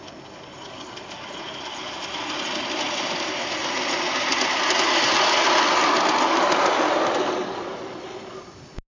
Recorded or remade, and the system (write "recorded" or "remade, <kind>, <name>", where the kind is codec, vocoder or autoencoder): recorded